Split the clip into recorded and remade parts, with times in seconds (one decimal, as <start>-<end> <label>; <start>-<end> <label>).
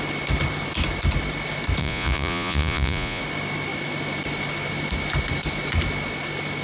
0.0-1.8 recorded; 1.8-3.2 remade; 3.2-6.6 recorded